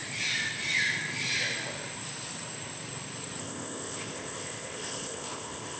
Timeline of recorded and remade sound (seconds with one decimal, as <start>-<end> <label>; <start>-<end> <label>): 0.0-3.4 recorded; 3.4-5.8 remade